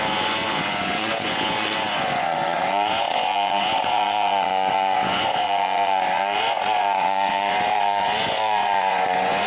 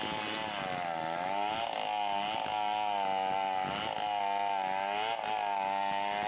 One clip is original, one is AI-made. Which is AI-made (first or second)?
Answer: first